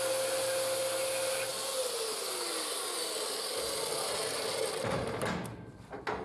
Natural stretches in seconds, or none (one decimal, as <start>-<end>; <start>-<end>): 0.0-6.2